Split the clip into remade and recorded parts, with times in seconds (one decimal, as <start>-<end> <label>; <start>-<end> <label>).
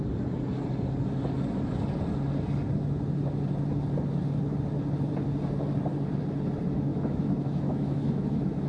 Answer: 0.0-6.9 recorded; 6.9-8.7 remade